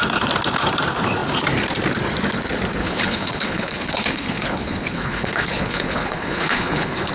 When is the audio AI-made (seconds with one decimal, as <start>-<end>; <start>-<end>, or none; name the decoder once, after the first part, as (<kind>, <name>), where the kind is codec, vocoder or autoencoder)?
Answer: 2.8-7.1 (codec, HILCodec)